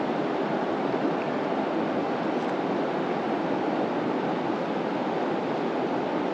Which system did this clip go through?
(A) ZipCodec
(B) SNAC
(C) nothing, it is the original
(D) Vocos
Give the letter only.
C